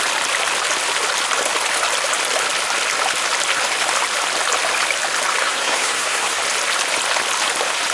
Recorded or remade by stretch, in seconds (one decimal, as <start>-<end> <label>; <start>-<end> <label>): 0.0-5.4 recorded; 5.4-6.4 remade; 6.4-7.9 recorded